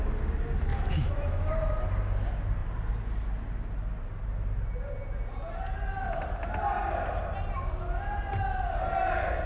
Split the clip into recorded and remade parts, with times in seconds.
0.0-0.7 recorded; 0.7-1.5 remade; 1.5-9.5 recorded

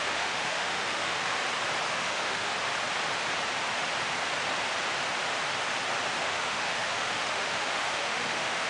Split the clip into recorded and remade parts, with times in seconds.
0.0-1.4 remade; 1.4-1.9 recorded; 1.9-2.5 remade; 2.5-6.2 recorded; 6.2-8.7 remade

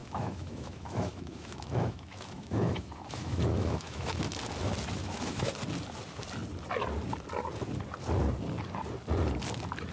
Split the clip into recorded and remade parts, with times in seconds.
0.0-4.2 remade; 4.2-5.0 recorded; 5.0-5.5 remade; 5.5-9.9 recorded